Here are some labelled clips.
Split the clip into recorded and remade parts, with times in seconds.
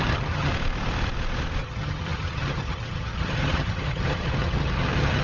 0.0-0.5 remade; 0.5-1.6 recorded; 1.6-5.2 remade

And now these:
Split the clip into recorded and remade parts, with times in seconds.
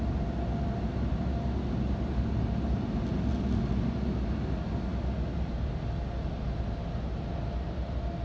0.0-8.2 recorded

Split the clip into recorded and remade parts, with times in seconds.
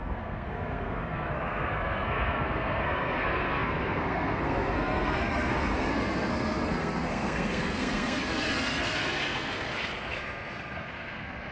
0.0-11.5 remade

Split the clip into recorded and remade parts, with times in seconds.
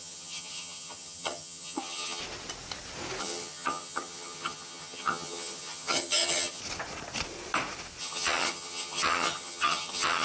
0.0-2.2 remade; 2.2-3.2 recorded; 3.2-6.6 remade; 6.6-8.0 recorded; 8.0-10.2 remade